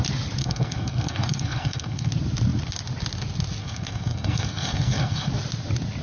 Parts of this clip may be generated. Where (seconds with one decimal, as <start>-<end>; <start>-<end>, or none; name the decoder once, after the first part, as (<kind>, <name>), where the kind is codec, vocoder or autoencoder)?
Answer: 0.4-2.1 (codec, SNAC); 3.6-5.3